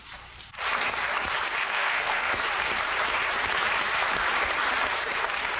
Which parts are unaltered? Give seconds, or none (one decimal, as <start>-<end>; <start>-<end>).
0.0-1.6; 2.3-5.6